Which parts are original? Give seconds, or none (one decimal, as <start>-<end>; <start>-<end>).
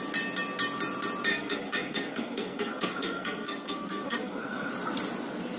0.0-1.3; 4.7-5.6